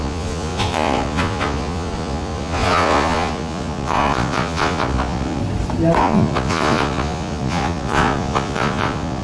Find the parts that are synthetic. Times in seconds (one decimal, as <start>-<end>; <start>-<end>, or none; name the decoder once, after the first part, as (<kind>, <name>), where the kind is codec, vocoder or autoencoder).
0.0-5.4 (vocoder, Vocos); 6.0-9.2